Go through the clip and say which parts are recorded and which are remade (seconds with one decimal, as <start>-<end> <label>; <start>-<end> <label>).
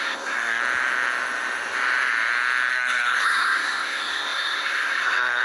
0.0-0.6 remade; 0.6-2.7 recorded; 2.7-5.4 remade